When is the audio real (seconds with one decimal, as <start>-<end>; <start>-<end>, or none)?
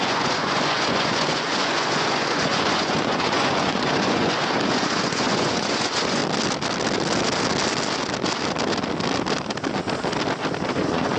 6.2-10.7